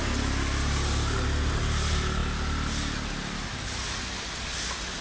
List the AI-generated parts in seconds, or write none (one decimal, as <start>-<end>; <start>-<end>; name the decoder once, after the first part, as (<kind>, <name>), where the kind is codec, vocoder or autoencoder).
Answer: none